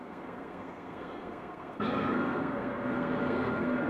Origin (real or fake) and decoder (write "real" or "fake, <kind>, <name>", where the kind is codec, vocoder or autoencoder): fake, codec, SNAC